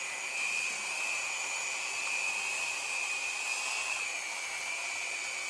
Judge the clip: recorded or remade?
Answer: remade